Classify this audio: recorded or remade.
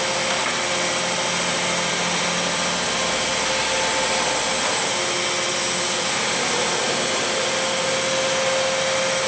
recorded